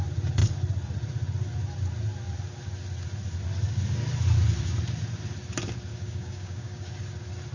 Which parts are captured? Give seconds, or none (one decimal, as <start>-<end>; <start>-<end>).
0.0-5.9; 6.9-7.5